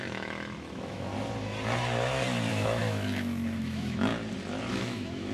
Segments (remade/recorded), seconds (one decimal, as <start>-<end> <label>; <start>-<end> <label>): 0.0-1.1 remade; 1.1-2.5 recorded; 2.5-4.1 remade; 4.1-4.7 recorded; 4.7-5.3 remade